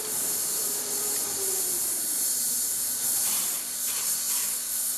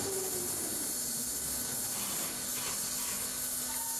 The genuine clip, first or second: second